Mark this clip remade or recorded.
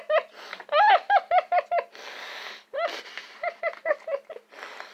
recorded